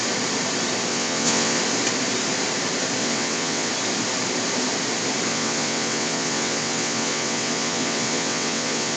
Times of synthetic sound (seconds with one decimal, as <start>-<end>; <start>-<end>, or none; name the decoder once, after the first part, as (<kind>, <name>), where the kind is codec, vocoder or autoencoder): 0.9-1.6 (vocoder, WaveNeXt); 3.0-3.7; 5.3-9.0